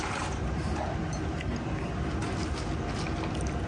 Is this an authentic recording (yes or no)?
yes